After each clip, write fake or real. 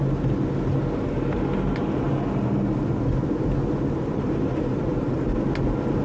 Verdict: real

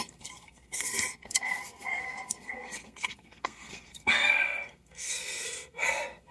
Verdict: fake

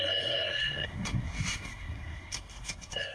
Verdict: fake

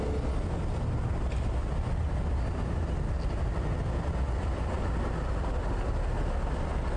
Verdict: real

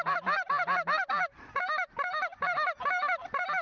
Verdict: real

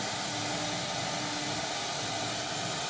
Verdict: real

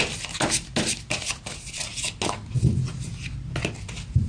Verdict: real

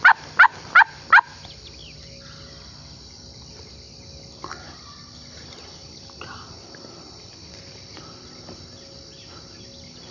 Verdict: real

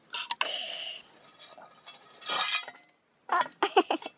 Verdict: real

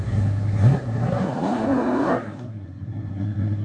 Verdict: fake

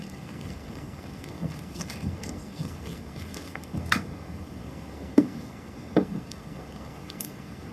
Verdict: fake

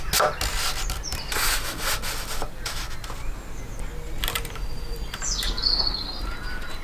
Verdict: real